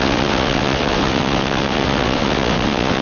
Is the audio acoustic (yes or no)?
no